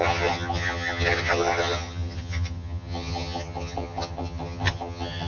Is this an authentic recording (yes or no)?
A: no